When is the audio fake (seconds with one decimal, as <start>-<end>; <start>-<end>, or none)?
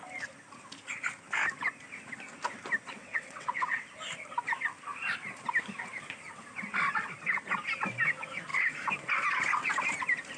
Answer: 3.0-3.9